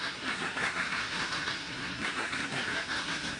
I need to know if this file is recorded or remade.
remade